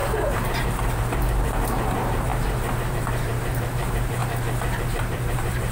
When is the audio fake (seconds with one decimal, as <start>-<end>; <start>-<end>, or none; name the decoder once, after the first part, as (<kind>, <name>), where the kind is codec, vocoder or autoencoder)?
0.0-4.2 (vocoder, BigVGAN v2); 4.8-5.7